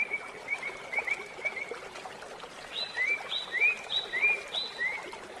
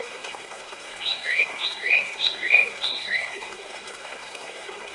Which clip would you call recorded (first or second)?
first